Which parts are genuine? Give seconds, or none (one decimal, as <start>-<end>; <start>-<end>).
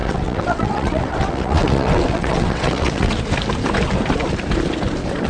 3.2-5.3